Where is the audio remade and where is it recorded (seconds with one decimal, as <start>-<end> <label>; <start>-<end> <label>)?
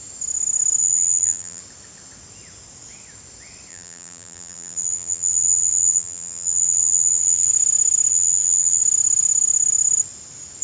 0.0-0.8 recorded; 0.8-1.6 remade; 1.6-3.7 recorded; 3.7-7.5 remade; 7.5-8.1 recorded; 8.1-8.8 remade; 8.8-10.6 recorded